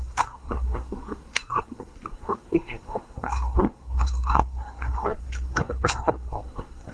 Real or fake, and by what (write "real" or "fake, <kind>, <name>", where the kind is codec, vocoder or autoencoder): fake, codec, SNAC